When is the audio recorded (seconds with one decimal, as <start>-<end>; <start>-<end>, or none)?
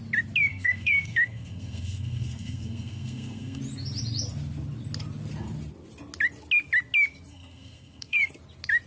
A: 0.0-0.5; 3.6-7.3; 8.3-8.9